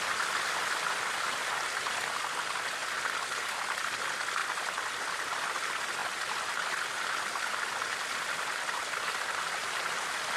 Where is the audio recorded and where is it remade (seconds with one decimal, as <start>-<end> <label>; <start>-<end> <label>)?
0.0-4.4 recorded; 4.4-5.0 remade; 5.0-9.6 recorded; 9.6-10.4 remade